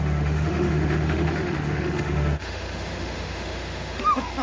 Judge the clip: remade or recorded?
remade